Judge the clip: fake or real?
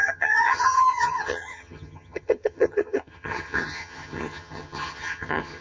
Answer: fake